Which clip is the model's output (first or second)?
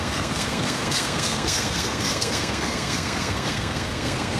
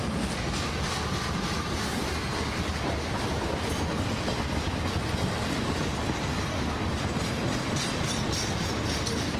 first